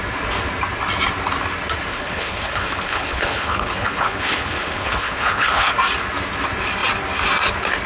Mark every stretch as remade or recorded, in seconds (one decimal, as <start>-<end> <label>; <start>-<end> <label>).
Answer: 0.0-1.9 recorded; 1.9-5.7 remade; 5.7-7.9 recorded